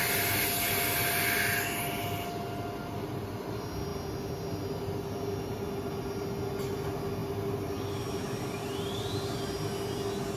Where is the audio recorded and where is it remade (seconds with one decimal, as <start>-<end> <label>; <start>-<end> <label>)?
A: 0.0-10.4 recorded